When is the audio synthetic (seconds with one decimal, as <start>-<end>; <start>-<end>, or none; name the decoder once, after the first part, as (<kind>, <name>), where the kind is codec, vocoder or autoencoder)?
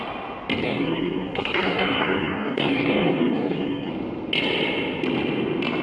0.6-3.9 (codec, SNAC)